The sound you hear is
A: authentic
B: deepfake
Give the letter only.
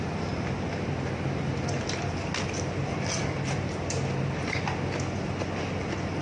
A